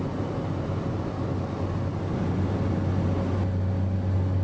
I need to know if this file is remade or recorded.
recorded